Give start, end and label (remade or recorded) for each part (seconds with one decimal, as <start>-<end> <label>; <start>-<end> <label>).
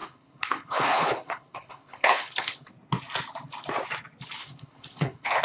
0.0-2.7 remade; 2.7-4.4 recorded; 4.4-5.4 remade